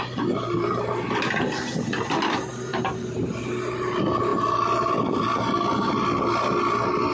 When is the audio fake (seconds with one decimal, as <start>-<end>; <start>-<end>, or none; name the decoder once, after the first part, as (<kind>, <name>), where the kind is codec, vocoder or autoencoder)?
2.7-3.4 (vocoder, BigVGAN v2)